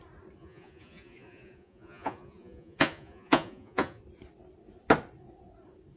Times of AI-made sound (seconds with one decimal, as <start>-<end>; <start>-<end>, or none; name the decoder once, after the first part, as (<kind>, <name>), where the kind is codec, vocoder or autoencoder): 0.4-4.0 (vocoder, Vocos)